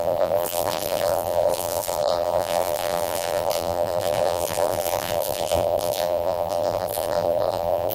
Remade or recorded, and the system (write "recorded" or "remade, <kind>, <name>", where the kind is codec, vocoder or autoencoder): remade, vocoder, BigVGAN v2